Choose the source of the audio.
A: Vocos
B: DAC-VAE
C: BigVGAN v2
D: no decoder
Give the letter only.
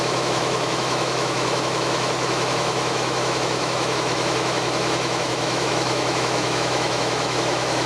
B